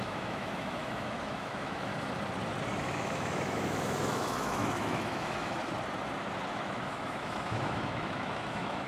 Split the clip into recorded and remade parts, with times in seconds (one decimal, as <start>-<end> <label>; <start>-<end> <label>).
0.0-1.9 remade; 1.9-2.8 recorded; 2.8-5.6 remade; 5.6-6.5 recorded; 6.5-8.9 remade